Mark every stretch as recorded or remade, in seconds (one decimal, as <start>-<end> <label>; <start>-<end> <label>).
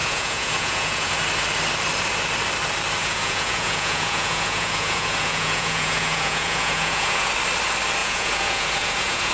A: 0.0-1.1 remade; 1.1-3.0 recorded; 3.0-7.3 remade; 7.3-8.0 recorded; 8.0-9.3 remade